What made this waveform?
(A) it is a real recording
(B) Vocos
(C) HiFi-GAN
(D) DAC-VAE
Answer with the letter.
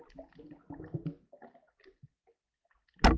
A